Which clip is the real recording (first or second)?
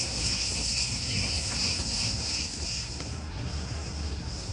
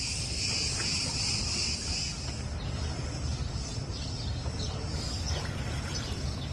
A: second